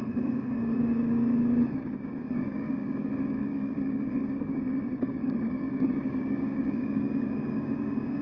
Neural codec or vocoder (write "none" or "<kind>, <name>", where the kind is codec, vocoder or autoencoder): codec, DAC